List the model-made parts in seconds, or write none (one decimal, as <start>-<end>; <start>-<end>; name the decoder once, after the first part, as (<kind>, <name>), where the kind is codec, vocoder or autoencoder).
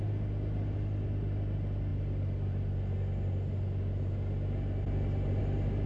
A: none